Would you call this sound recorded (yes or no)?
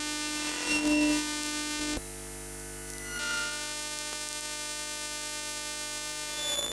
yes